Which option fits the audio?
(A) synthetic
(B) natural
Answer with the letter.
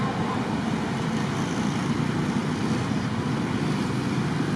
B